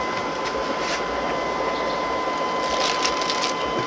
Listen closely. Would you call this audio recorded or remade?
recorded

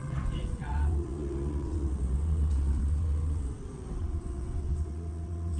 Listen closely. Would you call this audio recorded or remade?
remade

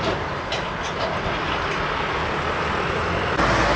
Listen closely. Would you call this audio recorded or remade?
recorded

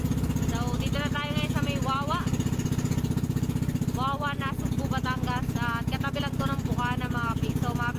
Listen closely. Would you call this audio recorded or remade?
recorded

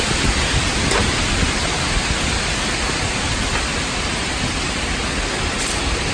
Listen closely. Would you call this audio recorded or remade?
recorded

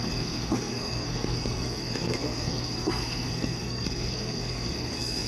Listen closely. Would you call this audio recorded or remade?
remade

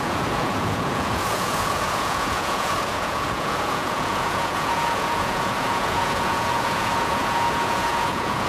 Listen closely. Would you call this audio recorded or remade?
remade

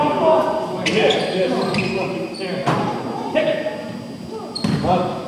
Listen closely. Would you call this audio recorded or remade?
recorded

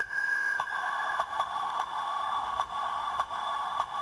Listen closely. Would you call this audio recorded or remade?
remade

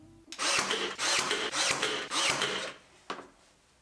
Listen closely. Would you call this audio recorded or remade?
recorded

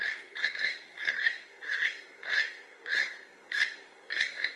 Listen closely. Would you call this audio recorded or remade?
remade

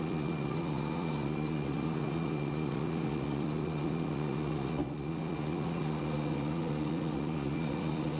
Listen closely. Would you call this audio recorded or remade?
remade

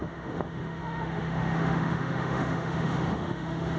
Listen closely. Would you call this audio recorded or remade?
remade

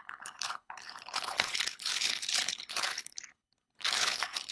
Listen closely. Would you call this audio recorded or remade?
remade